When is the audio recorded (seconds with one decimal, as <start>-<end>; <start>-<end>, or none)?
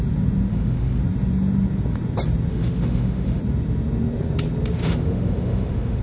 0.0-0.5; 1.0-2.5; 3.4-4.8